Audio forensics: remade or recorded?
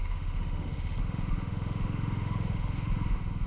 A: remade